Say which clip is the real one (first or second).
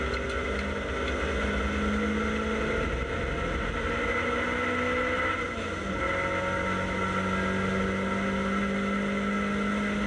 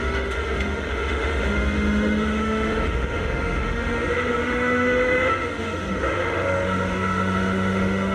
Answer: first